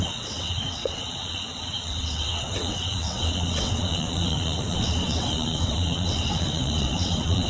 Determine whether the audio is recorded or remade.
remade